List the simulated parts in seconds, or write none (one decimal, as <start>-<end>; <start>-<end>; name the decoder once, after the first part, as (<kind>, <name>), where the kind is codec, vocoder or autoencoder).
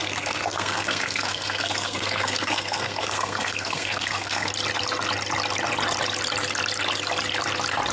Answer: 0.0-4.5 (codec, SNAC)